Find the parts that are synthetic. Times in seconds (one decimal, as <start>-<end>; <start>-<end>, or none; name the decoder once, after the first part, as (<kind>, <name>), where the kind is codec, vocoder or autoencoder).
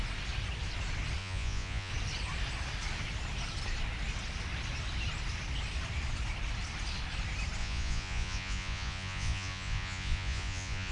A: 1.2-1.9 (vocoder, Vocos); 7.6-10.9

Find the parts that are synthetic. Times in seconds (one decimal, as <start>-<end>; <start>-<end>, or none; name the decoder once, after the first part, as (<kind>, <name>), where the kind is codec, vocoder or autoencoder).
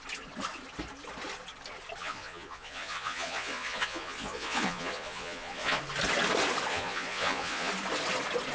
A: 2.0-5.8 (vocoder, Vocos); 6.7-7.7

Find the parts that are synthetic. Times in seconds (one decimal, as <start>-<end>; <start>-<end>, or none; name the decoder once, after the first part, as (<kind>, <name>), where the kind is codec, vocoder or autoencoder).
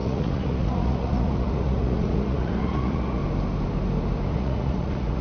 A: 0.0-3.2 (vocoder, Vocos); 4.3-5.2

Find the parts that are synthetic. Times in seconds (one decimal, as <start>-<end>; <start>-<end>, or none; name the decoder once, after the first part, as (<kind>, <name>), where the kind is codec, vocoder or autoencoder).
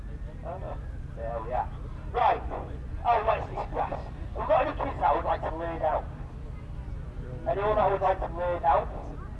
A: 2.2-2.9 (vocoder, Vocos)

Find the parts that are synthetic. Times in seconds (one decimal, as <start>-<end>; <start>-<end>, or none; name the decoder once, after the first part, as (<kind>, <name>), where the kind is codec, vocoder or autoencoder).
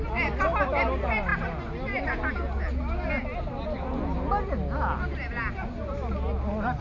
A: none